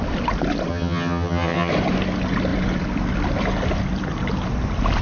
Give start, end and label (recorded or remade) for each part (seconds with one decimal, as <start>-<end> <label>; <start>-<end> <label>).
0.0-0.7 recorded; 0.7-1.7 remade; 1.7-5.0 recorded